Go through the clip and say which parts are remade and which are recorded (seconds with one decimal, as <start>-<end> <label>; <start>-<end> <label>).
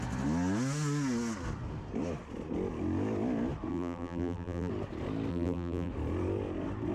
0.0-3.7 recorded; 3.7-4.7 remade; 4.7-5.3 recorded; 5.3-5.9 remade; 5.9-6.9 recorded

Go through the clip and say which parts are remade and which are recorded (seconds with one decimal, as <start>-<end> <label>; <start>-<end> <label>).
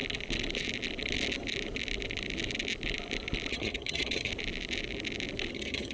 0.0-3.5 recorded; 3.5-4.3 remade; 4.3-5.5 recorded; 5.5-5.9 remade